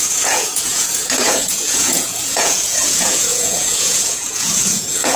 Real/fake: fake